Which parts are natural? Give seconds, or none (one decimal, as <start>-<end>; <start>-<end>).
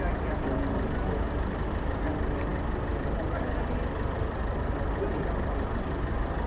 0.0-6.5